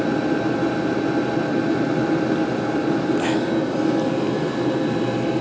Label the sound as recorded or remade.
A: recorded